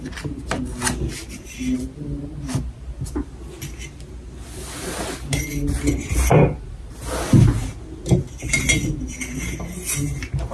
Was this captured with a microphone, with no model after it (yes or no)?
yes